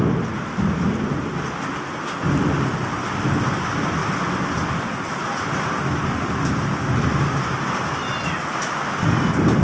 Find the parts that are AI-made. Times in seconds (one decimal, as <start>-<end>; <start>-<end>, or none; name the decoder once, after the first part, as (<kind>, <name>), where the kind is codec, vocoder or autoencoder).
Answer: 8.0-8.8 (vocoder, BigVGAN v2)